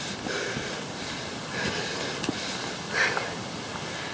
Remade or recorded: recorded